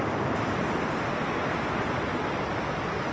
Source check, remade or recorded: recorded